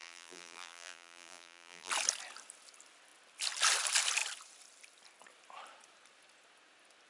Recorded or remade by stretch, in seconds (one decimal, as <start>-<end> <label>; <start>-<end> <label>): 0.0-1.9 remade; 1.9-7.1 recorded